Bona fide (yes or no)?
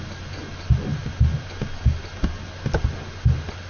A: yes